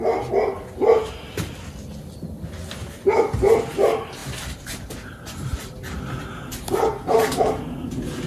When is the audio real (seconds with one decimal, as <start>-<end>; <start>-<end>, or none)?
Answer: 0.0-8.3